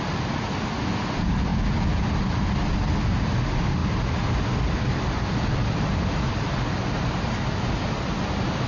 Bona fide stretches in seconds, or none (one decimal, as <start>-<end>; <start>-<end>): 0.0-8.7